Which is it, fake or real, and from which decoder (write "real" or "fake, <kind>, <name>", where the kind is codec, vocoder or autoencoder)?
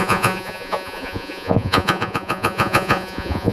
fake, vocoder, Vocos